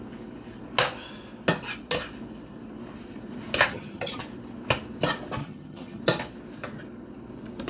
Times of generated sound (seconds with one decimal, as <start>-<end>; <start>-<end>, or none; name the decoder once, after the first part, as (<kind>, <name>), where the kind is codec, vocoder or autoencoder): 3.7-4.2 (vocoder, HiFi-GAN); 5.4-6.0